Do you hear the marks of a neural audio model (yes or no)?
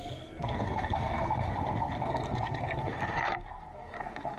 yes